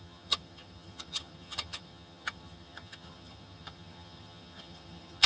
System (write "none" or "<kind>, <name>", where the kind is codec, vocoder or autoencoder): vocoder, HiFi-GAN